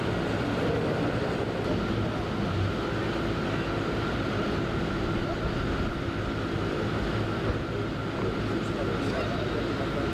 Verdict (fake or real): real